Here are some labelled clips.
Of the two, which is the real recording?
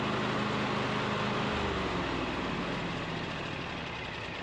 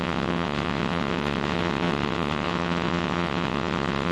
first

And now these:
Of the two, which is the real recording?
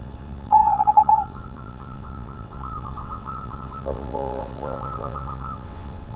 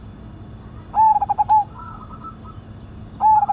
second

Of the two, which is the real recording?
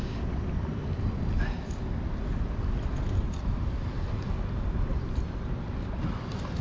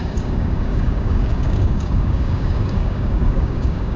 first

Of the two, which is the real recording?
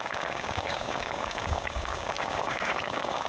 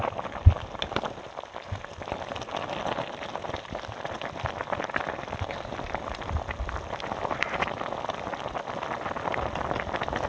second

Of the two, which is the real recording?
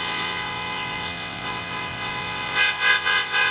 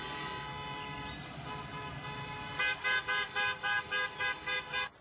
second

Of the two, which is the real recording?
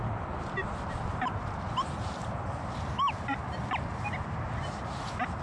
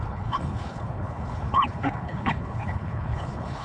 first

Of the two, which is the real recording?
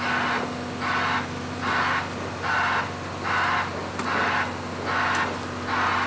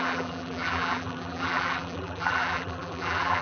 first